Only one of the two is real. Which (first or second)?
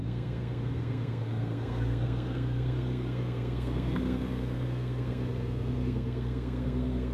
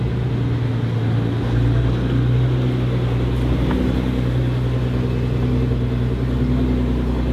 second